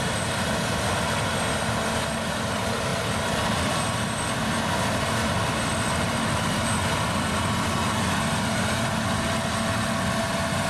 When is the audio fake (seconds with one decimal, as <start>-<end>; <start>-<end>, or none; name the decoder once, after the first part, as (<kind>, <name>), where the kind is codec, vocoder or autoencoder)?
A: none